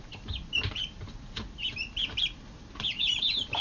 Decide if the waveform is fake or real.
fake